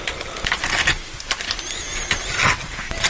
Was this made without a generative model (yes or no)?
yes